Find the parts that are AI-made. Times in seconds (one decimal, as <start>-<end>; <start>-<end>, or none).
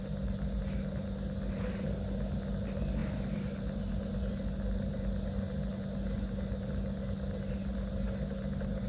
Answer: none